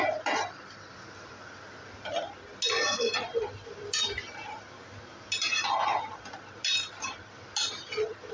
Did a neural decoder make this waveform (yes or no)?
no